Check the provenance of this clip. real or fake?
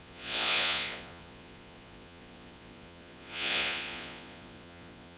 fake